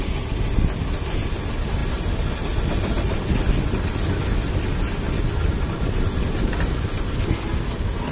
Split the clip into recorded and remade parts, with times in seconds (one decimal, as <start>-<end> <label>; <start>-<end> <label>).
0.0-8.1 recorded